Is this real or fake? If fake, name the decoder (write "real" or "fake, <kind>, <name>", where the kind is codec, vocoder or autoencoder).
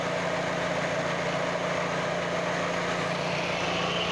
real